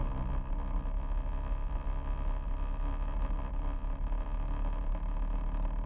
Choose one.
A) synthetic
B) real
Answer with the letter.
B